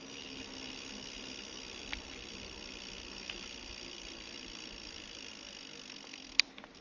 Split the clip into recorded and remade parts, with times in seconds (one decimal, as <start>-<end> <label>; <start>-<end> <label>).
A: 0.0-1.8 recorded; 1.8-5.3 remade; 5.3-6.8 recorded

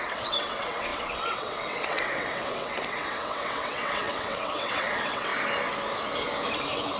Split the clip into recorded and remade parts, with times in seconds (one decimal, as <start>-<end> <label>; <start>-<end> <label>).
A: 0.0-5.3 remade; 5.3-7.0 recorded